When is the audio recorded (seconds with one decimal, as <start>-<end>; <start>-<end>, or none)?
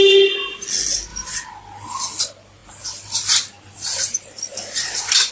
0.0-5.3